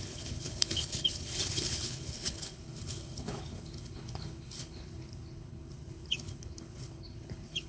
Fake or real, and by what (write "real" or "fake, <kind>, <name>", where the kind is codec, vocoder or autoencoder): fake, codec, HILCodec